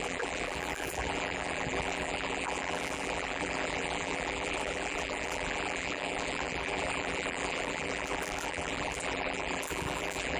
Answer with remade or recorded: remade